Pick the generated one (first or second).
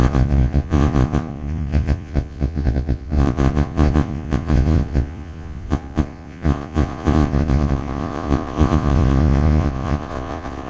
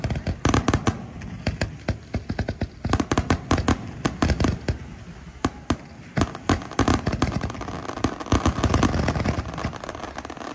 first